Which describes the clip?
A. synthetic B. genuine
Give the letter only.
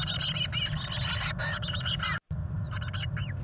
B